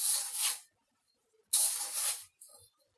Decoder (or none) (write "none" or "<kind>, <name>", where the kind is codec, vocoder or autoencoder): none